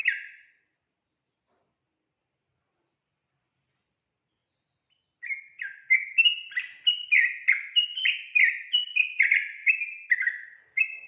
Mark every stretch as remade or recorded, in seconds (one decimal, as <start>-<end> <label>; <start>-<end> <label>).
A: 0.0-11.1 recorded